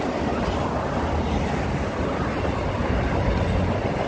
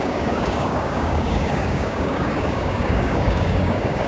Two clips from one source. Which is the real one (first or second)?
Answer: first